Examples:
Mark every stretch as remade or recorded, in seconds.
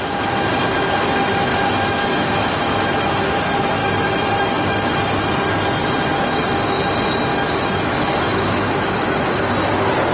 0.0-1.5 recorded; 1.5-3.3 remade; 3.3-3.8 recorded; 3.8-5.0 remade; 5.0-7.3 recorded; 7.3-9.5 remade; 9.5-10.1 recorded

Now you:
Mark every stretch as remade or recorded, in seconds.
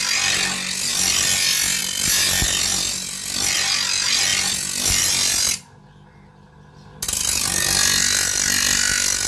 0.0-9.3 recorded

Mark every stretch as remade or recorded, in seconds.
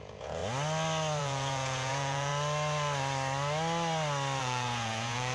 0.0-0.4 remade; 0.4-1.2 recorded; 1.2-2.3 remade; 2.3-4.4 recorded; 4.4-5.3 remade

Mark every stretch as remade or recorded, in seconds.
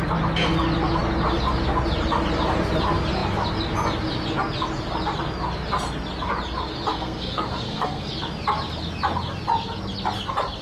0.0-6.9 recorded; 6.9-8.1 remade; 8.1-10.6 recorded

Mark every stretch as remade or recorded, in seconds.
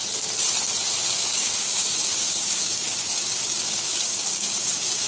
0.0-1.1 recorded; 1.1-5.1 remade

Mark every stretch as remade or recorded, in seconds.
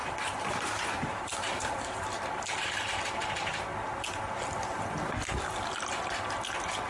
0.0-2.7 remade; 2.7-6.9 recorded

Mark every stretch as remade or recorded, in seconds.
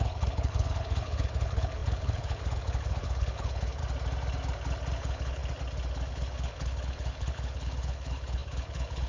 0.0-3.8 remade; 3.8-5.0 recorded; 5.0-5.4 remade; 5.4-6.1 recorded; 6.1-9.1 remade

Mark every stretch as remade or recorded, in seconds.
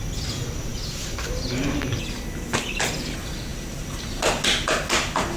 0.0-5.4 recorded